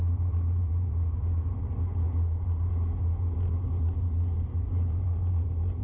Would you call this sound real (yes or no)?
yes